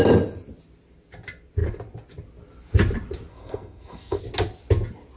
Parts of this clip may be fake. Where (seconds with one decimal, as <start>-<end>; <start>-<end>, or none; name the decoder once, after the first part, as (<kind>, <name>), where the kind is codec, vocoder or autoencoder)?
3.3-4.2 (codec, SNAC)